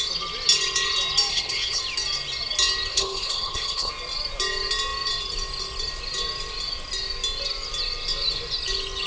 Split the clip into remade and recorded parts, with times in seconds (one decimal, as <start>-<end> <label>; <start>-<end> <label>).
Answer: 0.0-1.3 recorded; 1.3-1.8 remade; 1.8-2.9 recorded; 2.9-3.9 remade; 3.9-9.1 recorded